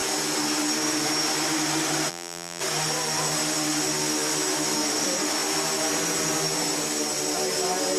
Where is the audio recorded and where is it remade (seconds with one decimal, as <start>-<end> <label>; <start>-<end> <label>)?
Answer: 0.0-2.1 recorded; 2.1-2.6 remade; 2.6-8.0 recorded